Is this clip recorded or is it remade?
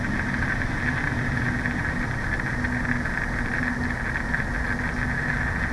recorded